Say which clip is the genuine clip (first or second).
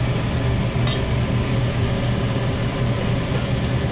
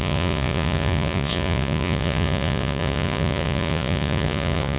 first